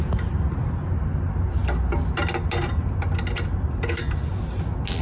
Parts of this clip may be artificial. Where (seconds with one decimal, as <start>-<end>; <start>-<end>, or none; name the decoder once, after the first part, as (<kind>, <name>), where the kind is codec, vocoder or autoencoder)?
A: none